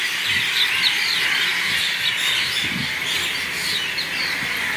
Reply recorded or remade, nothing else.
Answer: recorded